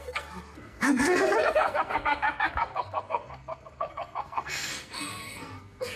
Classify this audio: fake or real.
fake